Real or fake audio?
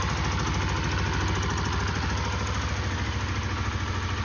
real